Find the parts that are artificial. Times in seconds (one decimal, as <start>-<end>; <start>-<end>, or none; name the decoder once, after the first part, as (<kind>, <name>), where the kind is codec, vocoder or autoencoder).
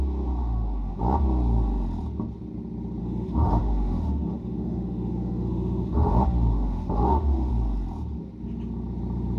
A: 0.4-1.0 (autoencoder, DAC-VAE); 3.0-7.5